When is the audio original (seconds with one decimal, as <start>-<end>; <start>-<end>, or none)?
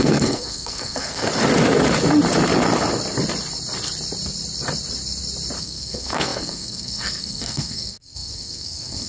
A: 1.3-5.6